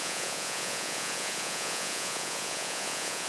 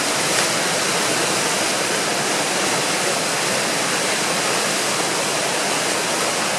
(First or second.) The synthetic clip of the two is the first